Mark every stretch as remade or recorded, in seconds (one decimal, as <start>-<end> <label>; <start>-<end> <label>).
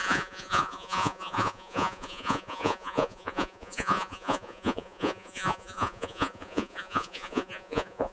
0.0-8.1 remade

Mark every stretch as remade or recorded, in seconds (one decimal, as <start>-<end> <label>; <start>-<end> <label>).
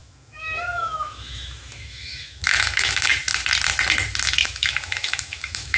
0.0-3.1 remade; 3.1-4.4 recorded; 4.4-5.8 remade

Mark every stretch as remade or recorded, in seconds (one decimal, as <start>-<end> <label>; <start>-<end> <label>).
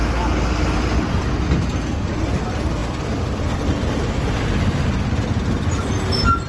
0.0-2.8 recorded; 2.8-6.5 remade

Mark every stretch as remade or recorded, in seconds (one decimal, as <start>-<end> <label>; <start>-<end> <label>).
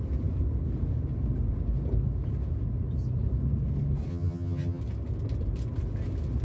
0.0-4.1 recorded; 4.1-4.8 remade; 4.8-6.4 recorded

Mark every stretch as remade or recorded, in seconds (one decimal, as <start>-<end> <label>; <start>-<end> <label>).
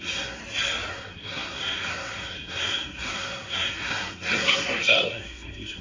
0.0-0.4 remade; 0.4-0.9 recorded; 0.9-5.8 remade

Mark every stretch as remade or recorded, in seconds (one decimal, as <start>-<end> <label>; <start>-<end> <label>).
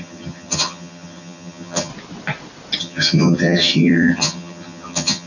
0.0-1.9 remade; 1.9-2.8 recorded; 2.8-5.3 remade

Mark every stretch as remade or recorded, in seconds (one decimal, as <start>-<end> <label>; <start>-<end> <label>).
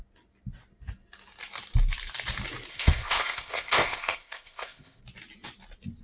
0.0-2.7 recorded; 2.7-5.0 remade; 5.0-6.0 recorded